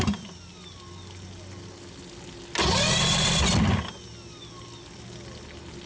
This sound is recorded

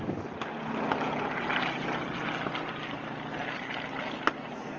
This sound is recorded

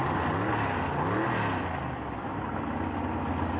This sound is recorded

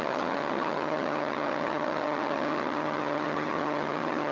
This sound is remade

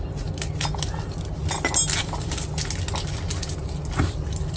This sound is recorded